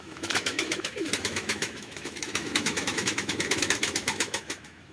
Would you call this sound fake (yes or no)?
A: yes